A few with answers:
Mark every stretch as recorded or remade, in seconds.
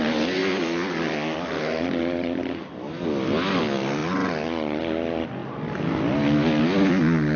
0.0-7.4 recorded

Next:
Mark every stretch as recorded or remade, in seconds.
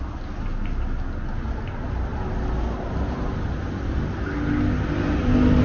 0.0-5.6 recorded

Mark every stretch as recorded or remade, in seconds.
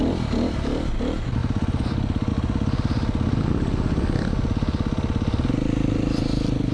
0.0-6.7 recorded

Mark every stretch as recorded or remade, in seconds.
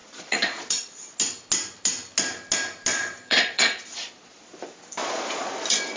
0.0-0.9 remade; 0.9-2.9 recorded; 2.9-4.5 remade; 4.5-5.0 recorded; 5.0-5.5 remade; 5.5-6.0 recorded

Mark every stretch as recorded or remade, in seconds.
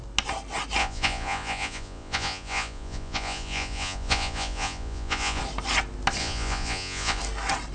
0.0-0.8 recorded; 0.8-5.4 remade; 5.4-6.2 recorded; 6.2-7.2 remade; 7.2-7.7 recorded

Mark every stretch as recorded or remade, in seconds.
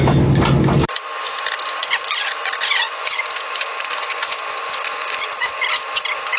0.0-1.8 recorded; 1.8-5.5 remade; 5.5-6.4 recorded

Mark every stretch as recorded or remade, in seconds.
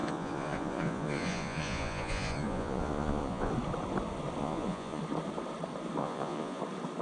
0.0-3.5 remade; 3.5-4.4 recorded; 4.4-5.0 remade; 5.0-6.0 recorded; 6.0-6.6 remade; 6.6-7.0 recorded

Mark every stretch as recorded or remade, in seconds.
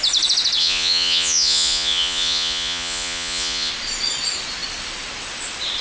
0.0-0.6 recorded; 0.6-3.7 remade; 3.7-5.8 recorded